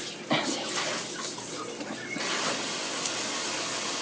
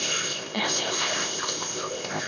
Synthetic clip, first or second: second